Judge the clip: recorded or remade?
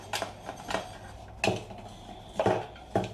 recorded